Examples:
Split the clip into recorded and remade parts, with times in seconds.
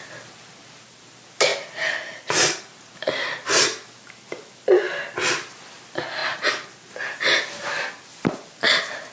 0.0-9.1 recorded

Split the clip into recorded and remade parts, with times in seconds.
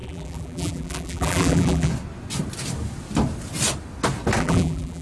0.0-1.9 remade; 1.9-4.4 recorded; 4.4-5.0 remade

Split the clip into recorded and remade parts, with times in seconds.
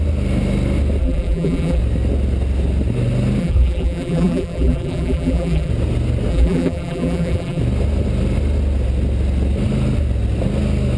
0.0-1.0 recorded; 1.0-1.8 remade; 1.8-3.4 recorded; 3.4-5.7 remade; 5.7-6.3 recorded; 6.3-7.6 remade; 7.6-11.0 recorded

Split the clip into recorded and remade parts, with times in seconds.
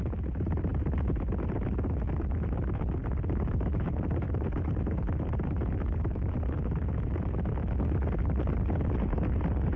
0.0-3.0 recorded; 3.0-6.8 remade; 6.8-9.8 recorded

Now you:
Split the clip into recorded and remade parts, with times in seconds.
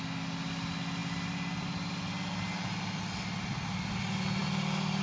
0.0-5.0 recorded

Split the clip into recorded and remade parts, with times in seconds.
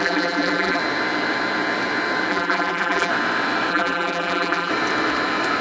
0.0-0.8 remade; 0.8-2.3 recorded; 2.3-3.1 remade; 3.1-3.7 recorded; 3.7-4.7 remade; 4.7-5.6 recorded